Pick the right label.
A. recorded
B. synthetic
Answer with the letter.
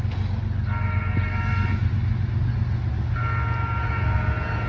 A